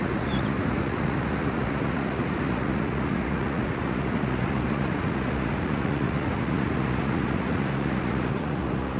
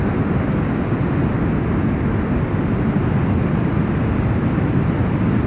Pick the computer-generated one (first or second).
first